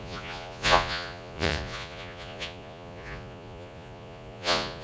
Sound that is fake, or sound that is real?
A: fake